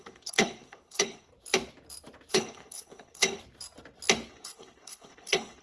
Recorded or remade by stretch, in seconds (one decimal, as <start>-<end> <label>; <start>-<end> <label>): 0.0-1.3 remade; 1.3-2.3 recorded; 2.3-3.4 remade; 3.4-4.3 recorded; 4.3-5.6 remade